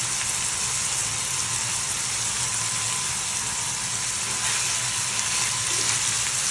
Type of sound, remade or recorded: recorded